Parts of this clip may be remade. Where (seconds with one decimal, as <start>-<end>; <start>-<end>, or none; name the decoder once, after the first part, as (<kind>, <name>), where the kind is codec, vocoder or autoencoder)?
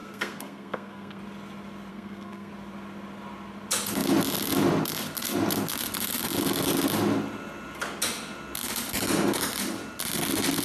0.0-1.2 (codec, SNAC); 1.9-2.5